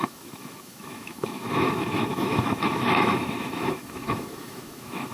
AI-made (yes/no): yes